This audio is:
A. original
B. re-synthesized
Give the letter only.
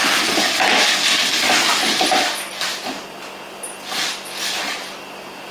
A